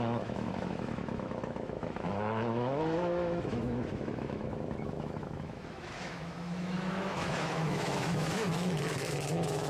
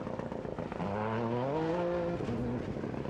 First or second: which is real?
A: second